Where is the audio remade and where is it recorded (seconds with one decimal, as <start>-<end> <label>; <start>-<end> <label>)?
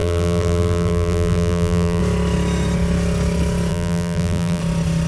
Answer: 0.0-2.0 remade; 2.0-3.7 recorded; 3.7-4.6 remade; 4.6-5.1 recorded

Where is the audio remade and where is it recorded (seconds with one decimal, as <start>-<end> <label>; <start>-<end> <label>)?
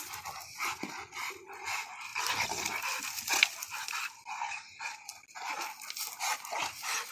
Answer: 0.0-5.1 recorded; 5.1-6.3 remade; 6.3-7.1 recorded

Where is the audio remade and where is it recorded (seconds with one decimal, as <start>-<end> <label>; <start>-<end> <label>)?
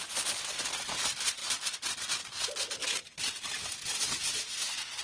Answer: 0.0-5.0 recorded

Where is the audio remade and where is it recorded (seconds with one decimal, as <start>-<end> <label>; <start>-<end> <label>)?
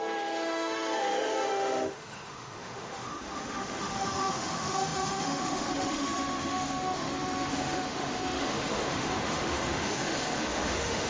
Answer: 0.0-11.1 remade